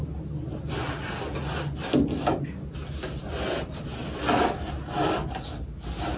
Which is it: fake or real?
real